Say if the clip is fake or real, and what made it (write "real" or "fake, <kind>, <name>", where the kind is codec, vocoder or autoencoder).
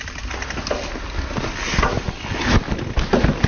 real